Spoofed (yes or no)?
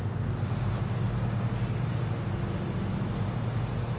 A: no